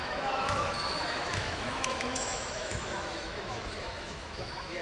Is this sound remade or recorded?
remade